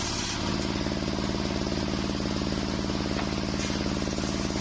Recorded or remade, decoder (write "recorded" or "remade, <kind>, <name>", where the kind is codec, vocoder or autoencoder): recorded